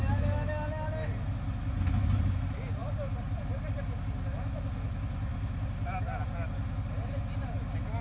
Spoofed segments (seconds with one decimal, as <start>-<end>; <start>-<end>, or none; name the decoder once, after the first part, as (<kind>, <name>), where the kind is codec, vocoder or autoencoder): none